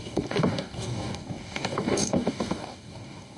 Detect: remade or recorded remade